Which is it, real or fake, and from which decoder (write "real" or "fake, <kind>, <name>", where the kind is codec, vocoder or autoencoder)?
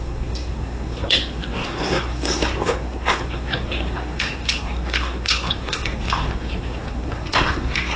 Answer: fake, codec, SNAC